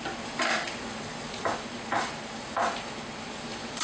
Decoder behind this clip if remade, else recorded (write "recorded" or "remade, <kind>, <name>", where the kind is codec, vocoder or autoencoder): recorded